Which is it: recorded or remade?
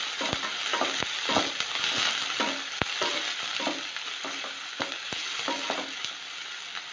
recorded